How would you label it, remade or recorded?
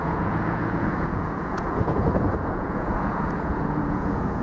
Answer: remade